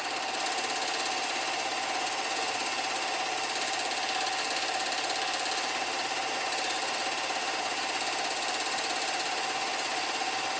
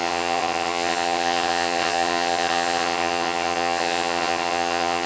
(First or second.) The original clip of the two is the first